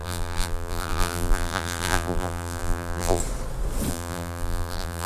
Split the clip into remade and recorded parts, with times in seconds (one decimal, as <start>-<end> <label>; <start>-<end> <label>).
0.0-3.2 remade; 3.2-3.9 recorded; 3.9-5.1 remade

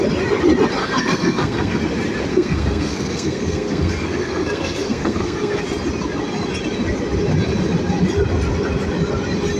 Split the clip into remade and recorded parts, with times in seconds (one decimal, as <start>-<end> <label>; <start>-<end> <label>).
0.0-0.8 recorded; 0.8-1.8 remade; 1.8-2.3 recorded; 2.3-5.6 remade; 5.6-9.6 recorded

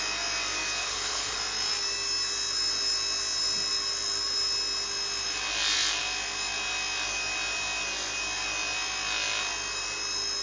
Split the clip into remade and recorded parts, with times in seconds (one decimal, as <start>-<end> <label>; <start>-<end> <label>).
0.0-0.8 recorded; 0.8-1.4 remade; 1.4-10.4 recorded

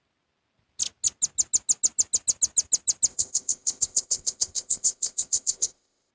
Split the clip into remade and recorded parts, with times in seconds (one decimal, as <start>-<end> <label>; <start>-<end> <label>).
0.0-3.1 recorded; 3.1-6.1 remade

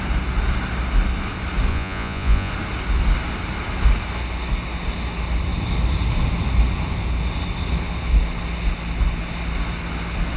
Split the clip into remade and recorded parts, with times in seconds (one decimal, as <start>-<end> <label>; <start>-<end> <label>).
0.0-1.7 recorded; 1.7-2.5 remade; 2.5-10.4 recorded

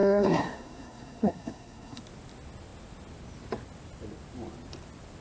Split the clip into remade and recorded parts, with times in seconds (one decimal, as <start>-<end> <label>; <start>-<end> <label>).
0.0-2.0 remade; 2.0-5.2 recorded

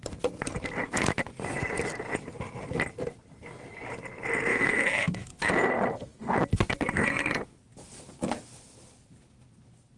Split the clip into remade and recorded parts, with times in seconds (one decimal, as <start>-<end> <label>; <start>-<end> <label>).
0.0-4.5 recorded; 4.5-5.5 remade; 5.5-10.0 recorded